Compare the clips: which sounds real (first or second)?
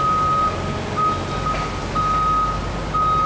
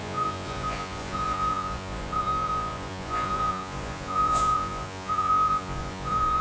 first